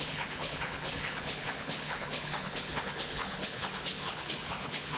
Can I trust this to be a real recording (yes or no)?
no